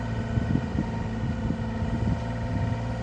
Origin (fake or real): real